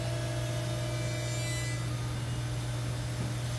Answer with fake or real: real